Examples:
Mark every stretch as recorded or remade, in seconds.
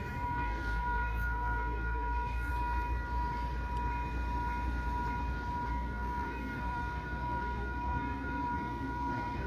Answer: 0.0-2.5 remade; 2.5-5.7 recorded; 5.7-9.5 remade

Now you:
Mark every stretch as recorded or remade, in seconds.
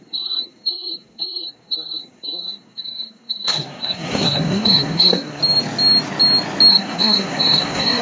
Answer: 0.0-5.4 remade; 5.4-6.7 recorded; 6.7-8.0 remade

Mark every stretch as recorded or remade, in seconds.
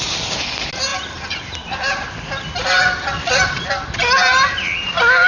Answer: 0.0-5.3 recorded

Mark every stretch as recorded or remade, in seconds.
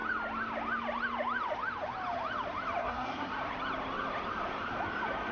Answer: 0.0-2.8 recorded; 2.8-3.3 remade; 3.3-5.3 recorded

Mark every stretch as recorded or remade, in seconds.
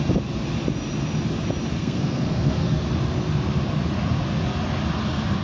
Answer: 0.0-1.8 recorded; 1.8-2.8 remade; 2.8-5.4 recorded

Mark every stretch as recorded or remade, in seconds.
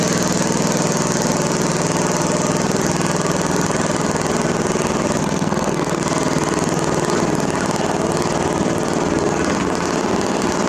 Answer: 0.0-5.2 recorded; 5.2-6.0 remade; 6.0-10.7 recorded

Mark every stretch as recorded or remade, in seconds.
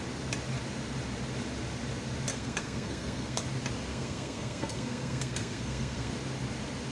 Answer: 0.0-2.3 recorded; 2.3-3.4 remade; 3.4-3.9 recorded; 3.9-6.1 remade; 6.1-6.9 recorded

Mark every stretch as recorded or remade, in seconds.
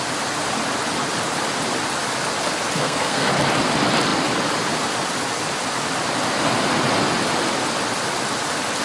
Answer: 0.0-2.8 recorded; 2.8-3.3 remade; 3.3-8.8 recorded